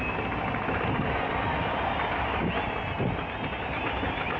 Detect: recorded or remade recorded